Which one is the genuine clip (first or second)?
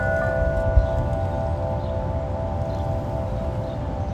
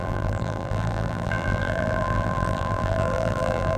first